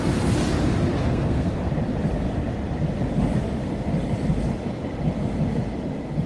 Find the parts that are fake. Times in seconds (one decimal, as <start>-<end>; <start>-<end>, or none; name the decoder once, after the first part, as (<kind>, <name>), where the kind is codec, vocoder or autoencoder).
1.0-1.7 (codec, SNAC)